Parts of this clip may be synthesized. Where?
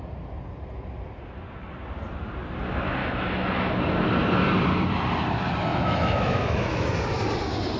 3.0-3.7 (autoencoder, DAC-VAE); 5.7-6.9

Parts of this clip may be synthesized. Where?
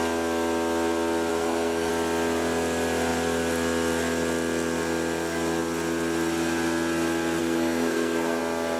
1.3-1.9 (codec, SNAC); 7.4-8.4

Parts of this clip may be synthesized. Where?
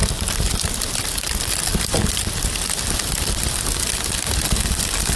none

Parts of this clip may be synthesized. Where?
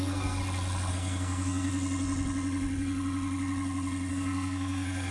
0.0-0.4 (codec, SNAC); 0.9-1.7; 4.1-5.1